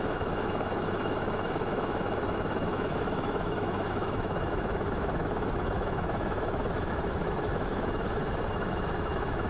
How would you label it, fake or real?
fake